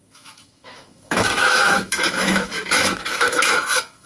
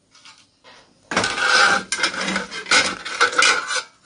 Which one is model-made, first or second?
first